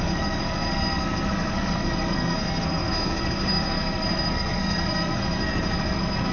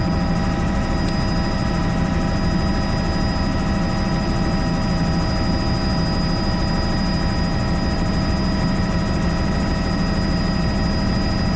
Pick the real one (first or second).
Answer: second